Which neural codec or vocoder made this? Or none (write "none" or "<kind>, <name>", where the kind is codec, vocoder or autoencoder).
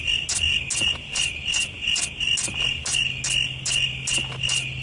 none